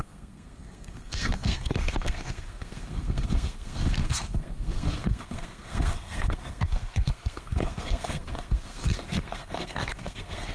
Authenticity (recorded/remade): remade